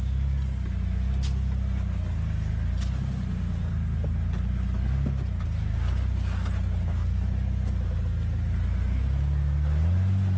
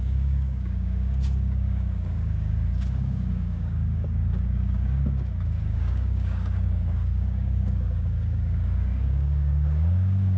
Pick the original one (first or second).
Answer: first